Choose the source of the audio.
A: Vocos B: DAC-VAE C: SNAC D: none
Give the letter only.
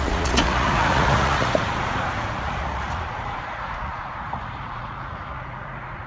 A